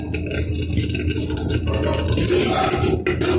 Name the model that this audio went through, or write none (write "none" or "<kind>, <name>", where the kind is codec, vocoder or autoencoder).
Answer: none